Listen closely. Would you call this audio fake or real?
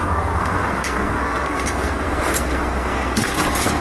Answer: fake